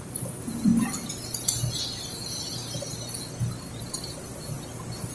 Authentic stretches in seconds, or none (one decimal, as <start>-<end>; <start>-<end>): 0.7-3.8